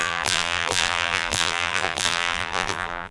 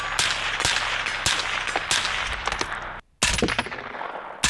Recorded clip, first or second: second